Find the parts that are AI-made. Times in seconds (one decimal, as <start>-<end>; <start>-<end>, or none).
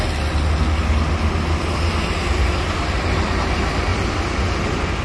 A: none